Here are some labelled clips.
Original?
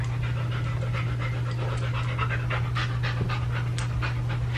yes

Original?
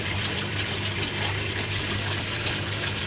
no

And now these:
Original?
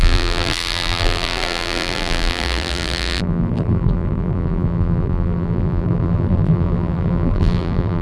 no